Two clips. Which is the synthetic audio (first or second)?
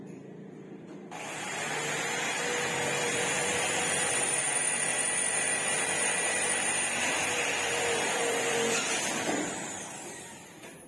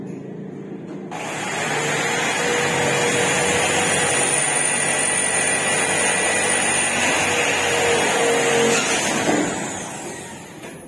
first